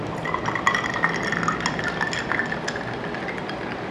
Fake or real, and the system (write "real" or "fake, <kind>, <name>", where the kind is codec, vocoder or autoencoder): real